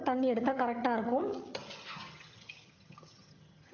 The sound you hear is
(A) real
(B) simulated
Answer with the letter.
B